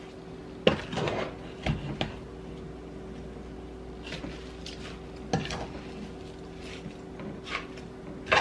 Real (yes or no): yes